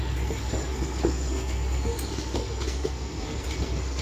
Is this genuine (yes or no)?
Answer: no